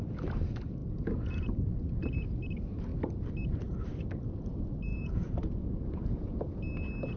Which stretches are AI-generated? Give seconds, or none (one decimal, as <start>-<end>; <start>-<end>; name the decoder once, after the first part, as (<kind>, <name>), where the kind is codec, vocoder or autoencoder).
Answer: 4.9-6.4 (vocoder, Vocos)